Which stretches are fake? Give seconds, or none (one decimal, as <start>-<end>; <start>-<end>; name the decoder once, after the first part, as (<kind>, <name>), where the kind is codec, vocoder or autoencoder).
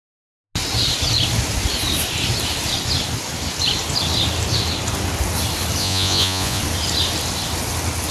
5.8-6.6 (vocoder, Vocos)